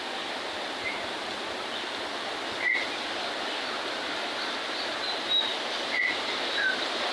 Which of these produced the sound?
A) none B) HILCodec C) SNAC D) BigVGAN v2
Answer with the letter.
A